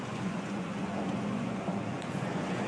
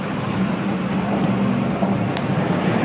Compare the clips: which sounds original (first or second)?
second